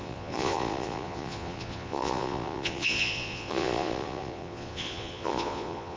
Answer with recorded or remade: remade